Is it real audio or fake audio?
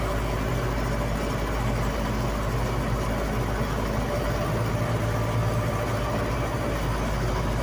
real